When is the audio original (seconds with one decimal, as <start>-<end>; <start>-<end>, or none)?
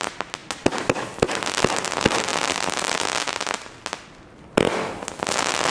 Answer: 0.0-5.7